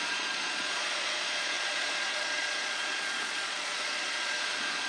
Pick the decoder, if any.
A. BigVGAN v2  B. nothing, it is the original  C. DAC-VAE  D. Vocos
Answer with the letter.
D